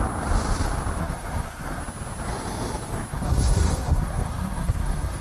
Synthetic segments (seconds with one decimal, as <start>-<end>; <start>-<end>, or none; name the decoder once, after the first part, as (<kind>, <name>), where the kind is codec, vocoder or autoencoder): 1.0-1.8 (codec, SNAC); 3.1-5.2